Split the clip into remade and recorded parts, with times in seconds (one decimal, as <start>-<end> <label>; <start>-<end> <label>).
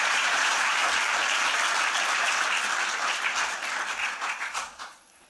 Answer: 0.0-0.8 remade; 0.8-4.0 recorded; 4.0-5.3 remade